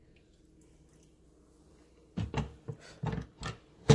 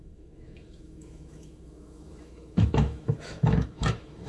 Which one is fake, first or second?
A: second